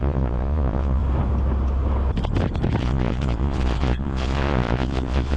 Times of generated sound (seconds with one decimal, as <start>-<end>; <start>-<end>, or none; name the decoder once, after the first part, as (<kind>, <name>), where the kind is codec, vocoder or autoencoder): 0.0-1.0 (vocoder, Vocos); 2.8-5.4

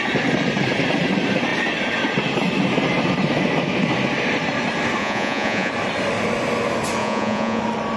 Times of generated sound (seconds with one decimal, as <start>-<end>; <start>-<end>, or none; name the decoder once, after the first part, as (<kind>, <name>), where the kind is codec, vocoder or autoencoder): 5.0-5.7 (vocoder, Vocos); 7.0-7.6

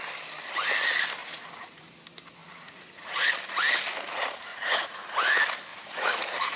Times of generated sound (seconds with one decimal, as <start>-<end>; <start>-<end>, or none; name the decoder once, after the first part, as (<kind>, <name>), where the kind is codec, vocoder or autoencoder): 1.2-1.9 (vocoder, Vocos); 2.4-3.3; 4.5-5.0; 5.7-6.6

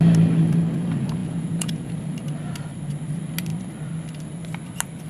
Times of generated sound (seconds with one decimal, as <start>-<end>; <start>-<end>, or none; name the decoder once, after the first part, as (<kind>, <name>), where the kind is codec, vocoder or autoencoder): 1.2-1.9 (vocoder, Vocos)

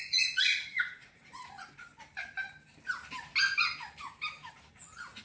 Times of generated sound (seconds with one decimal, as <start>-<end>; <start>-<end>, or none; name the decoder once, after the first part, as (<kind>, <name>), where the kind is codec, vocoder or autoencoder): 0.0-1.9 (vocoder, Vocos); 4.7-5.2

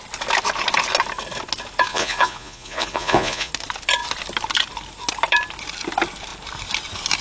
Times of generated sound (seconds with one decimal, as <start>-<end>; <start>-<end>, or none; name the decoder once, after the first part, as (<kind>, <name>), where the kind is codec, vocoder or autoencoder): 1.9-3.5 (vocoder, Vocos)